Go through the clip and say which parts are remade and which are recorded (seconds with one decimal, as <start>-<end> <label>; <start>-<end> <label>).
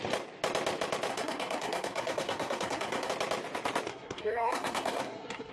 0.0-1.1 recorded; 1.1-3.1 remade; 3.1-3.9 recorded; 3.9-5.5 remade